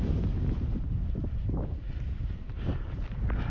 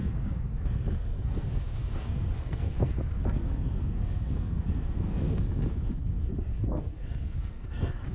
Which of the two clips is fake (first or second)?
second